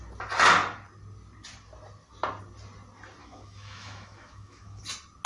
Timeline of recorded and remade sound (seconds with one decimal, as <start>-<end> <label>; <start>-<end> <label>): 0.0-3.2 recorded; 3.2-4.8 remade; 4.8-5.3 recorded